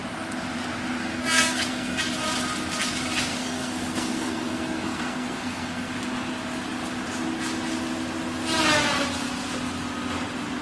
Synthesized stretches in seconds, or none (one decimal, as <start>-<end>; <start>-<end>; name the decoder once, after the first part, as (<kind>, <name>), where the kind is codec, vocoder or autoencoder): 1.0-2.0 (codec, SNAC); 3.3-5.9